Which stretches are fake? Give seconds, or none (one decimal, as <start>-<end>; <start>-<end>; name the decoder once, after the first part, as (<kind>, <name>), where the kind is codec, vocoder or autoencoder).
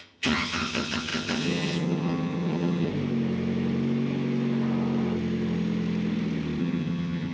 0.0-2.9 (vocoder, HiFi-GAN); 6.6-7.3